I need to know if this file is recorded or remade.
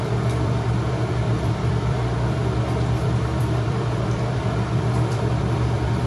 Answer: remade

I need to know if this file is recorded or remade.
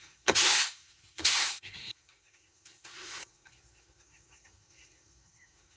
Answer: remade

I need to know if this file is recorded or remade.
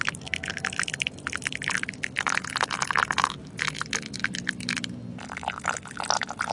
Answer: recorded